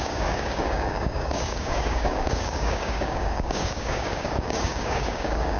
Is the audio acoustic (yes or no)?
no